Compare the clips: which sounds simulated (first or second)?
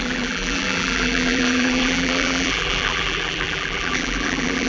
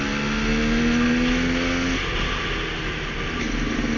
first